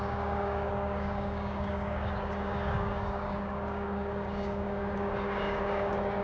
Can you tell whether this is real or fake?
fake